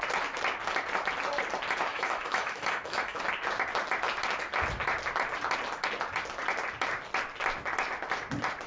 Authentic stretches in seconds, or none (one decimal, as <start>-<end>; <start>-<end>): 0.0-1.9; 3.2-8.7